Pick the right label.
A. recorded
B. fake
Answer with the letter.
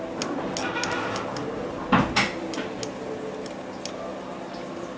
A